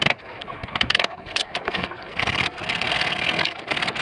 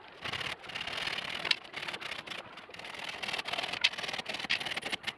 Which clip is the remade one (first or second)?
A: first